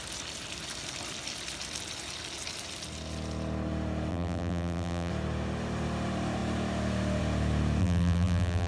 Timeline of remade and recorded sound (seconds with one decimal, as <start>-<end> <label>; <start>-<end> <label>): 0.0-4.1 recorded; 4.1-5.1 remade; 5.1-7.8 recorded; 7.8-8.7 remade